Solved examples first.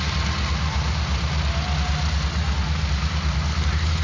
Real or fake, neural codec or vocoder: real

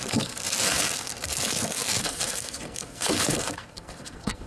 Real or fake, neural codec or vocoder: fake, codec, SNAC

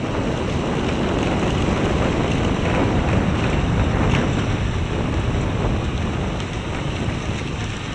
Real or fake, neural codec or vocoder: real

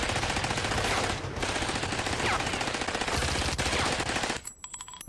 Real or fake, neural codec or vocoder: real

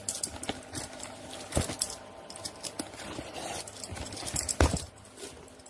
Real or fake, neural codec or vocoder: real